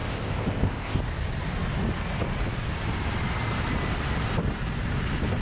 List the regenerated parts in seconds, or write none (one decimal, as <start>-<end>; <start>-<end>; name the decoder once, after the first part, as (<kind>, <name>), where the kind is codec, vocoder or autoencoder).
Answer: 0.0-1.0 (codec, ZipCodec)